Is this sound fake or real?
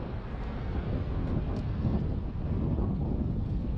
fake